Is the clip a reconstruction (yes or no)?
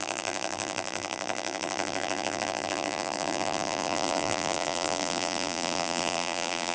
yes